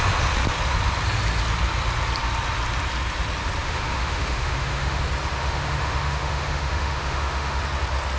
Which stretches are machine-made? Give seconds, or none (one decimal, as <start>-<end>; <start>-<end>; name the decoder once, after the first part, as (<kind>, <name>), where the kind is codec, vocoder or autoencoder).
3.6-5.0 (autoencoder, DAC-VAE); 5.4-7.6